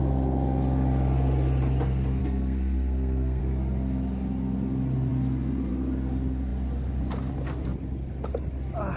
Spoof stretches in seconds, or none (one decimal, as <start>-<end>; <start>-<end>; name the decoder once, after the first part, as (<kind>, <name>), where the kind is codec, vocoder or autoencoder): 2.2-3.4 (codec, SNAC)